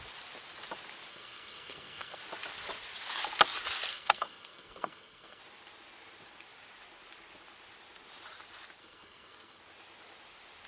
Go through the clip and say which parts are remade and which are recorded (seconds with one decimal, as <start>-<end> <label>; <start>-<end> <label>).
0.0-1.1 recorded; 1.1-2.2 remade; 2.2-3.9 recorded; 3.9-5.4 remade; 5.4-8.8 recorded; 8.8-9.6 remade; 9.6-10.7 recorded